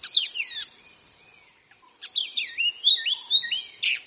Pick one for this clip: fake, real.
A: real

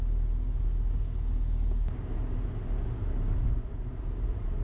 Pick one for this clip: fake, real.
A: real